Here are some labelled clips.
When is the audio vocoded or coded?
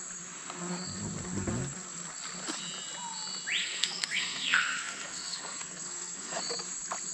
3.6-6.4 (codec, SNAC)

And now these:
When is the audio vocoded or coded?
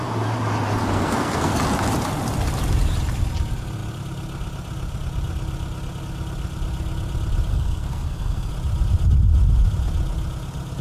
0.8-1.6 (codec, SNAC); 7.5-8.5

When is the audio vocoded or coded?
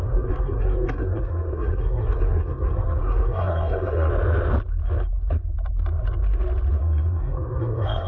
0.0-4.1 (codec, SNAC); 6.8-8.1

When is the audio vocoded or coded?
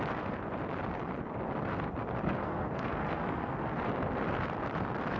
2.4-3.8 (codec, SNAC)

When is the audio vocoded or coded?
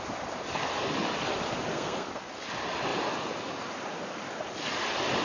1.7-2.3 (codec, SNAC)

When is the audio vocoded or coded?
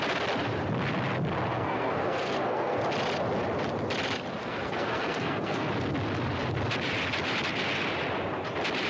1.5-2.8 (codec, SNAC); 4.4-5.7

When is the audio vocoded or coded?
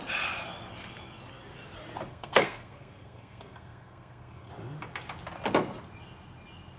2.1-4.5 (codec, SNAC)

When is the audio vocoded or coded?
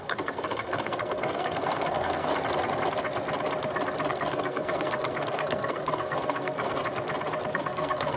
0.0-2.3 (codec, SNAC); 4.1-6.8; 7.5-8.2